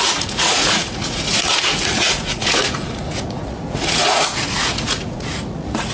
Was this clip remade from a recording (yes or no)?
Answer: yes